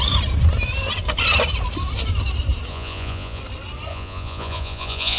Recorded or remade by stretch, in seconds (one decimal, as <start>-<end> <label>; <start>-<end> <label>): 0.0-2.7 recorded; 2.7-3.4 remade; 3.4-3.9 recorded; 3.9-5.2 remade